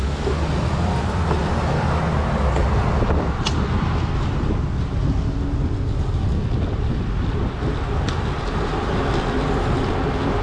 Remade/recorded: recorded